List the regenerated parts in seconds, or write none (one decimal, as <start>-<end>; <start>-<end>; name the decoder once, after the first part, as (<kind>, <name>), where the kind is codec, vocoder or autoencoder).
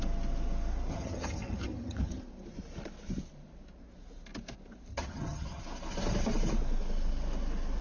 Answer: 0.9-2.2 (vocoder, HiFi-GAN); 4.9-5.6